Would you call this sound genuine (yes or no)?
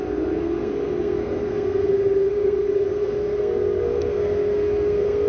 no